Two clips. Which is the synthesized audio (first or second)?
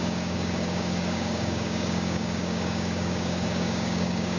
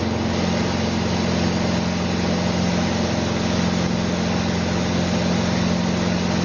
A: first